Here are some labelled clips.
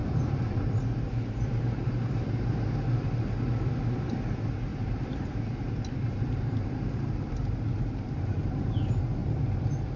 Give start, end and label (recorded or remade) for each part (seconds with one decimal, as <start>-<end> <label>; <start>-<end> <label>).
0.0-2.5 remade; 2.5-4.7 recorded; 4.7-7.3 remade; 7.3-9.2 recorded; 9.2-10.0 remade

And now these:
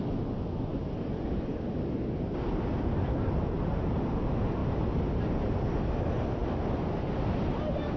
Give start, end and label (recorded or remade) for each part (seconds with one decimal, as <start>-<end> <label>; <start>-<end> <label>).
0.0-4.6 recorded; 4.6-6.0 remade; 6.0-6.4 recorded; 6.4-7.0 remade; 7.0-8.0 recorded

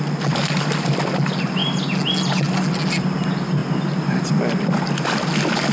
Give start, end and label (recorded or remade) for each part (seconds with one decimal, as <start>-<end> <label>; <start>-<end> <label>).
0.0-5.7 recorded

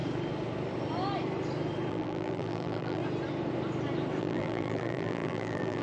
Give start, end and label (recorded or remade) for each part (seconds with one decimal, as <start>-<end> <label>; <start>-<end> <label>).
0.0-1.9 recorded; 1.9-3.0 remade; 3.0-4.2 recorded; 4.2-5.8 remade